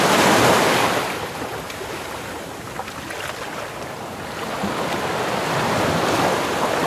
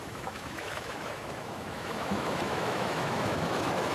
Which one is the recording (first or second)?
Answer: first